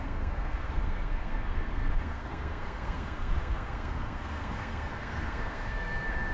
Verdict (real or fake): fake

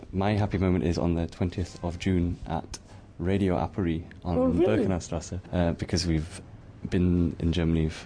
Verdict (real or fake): real